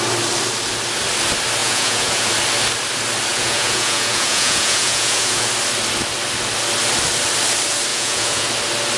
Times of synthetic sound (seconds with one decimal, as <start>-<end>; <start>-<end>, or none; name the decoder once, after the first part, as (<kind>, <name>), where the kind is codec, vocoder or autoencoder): 1.6-2.3 (vocoder, Vocos); 3.3-5.5; 7.9-8.5